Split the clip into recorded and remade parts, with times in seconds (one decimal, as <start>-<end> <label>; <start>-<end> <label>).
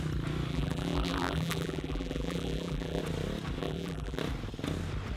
0.0-0.5 recorded; 0.5-3.0 remade; 3.0-3.6 recorded; 3.6-4.2 remade; 4.2-5.2 recorded